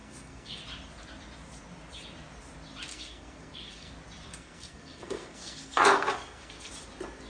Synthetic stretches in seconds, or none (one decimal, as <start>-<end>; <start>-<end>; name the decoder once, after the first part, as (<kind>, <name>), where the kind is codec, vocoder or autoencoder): 0.0-0.6 (codec, SNAC); 2.9-3.9; 4.3-6.7